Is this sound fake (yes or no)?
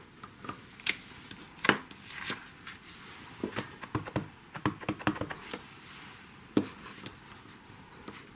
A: no